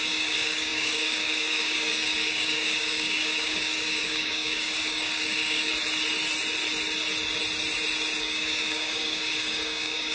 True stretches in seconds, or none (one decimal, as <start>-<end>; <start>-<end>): 5.7-8.2